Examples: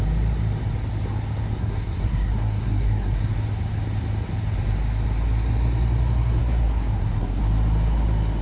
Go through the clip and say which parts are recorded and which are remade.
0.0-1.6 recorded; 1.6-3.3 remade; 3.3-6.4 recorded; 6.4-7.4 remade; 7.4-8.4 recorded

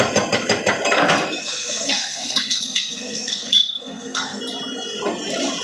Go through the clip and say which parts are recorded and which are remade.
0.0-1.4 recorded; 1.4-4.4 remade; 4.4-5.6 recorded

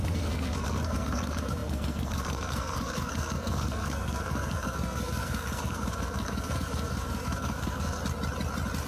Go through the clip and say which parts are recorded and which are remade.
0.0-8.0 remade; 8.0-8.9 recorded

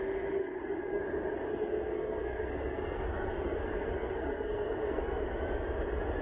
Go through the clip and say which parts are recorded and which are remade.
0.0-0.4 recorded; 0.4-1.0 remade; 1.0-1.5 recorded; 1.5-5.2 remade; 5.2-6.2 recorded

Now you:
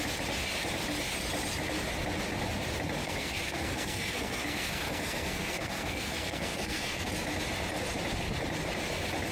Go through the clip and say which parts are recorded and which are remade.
0.0-3.0 recorded; 3.0-7.1 remade; 7.1-9.3 recorded